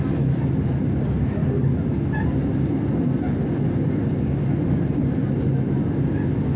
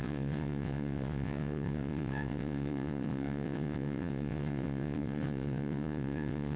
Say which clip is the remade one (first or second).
second